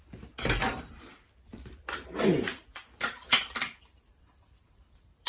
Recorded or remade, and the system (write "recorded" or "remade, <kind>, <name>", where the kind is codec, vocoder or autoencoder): remade, vocoder, BigVGAN v2